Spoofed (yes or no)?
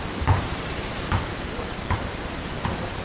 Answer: yes